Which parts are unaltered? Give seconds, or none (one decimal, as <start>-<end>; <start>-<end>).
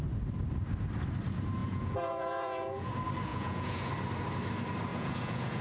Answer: 0.0-1.6; 2.9-3.3; 3.9-4.9